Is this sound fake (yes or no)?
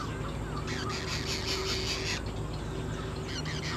no